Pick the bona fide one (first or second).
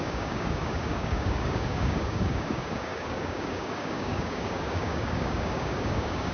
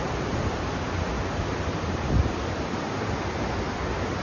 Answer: second